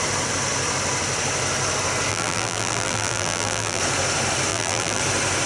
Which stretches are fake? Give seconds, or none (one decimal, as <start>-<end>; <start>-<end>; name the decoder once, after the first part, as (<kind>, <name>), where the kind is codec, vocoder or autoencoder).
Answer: 2.1-3.8 (vocoder, BigVGAN v2); 4.5-5.0